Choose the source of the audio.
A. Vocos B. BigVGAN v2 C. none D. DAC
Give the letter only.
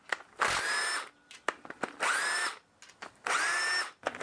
C